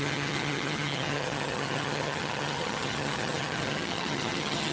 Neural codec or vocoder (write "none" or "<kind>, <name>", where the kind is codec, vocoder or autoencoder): vocoder, HiFi-GAN